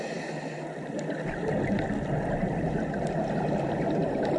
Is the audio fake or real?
real